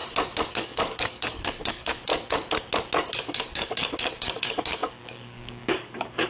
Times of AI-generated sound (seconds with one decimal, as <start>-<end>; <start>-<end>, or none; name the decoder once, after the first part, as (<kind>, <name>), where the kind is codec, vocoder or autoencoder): 0.5-2.1 (codec, DAC); 3.1-6.3